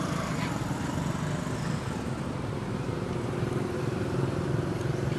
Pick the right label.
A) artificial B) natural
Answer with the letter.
B